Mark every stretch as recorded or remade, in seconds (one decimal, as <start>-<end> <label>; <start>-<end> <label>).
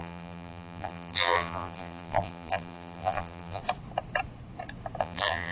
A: 0.0-3.6 remade; 3.6-5.0 recorded; 5.0-5.5 remade